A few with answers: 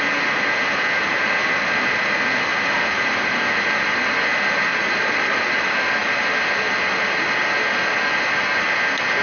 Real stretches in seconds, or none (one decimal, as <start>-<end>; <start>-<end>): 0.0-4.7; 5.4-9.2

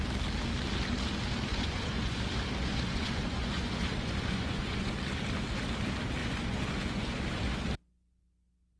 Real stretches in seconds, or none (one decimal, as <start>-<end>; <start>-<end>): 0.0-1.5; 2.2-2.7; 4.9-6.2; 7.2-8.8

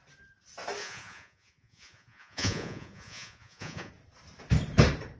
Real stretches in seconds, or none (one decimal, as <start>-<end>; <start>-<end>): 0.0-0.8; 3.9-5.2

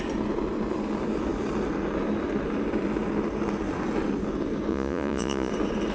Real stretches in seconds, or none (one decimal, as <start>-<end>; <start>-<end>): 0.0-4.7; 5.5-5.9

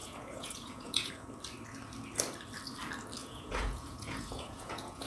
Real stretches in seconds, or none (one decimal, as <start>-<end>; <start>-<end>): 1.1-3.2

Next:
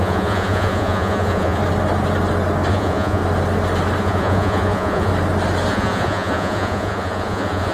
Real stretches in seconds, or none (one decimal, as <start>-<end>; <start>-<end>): 1.6-2.7; 3.2-4.0; 5.1-5.7

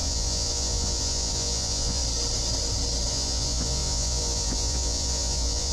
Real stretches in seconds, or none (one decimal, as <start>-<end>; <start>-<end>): 2.0-3.1

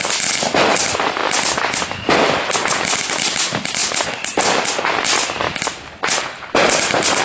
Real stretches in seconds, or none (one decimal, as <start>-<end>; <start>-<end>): 0.0-7.2